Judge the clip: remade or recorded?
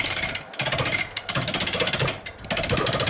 recorded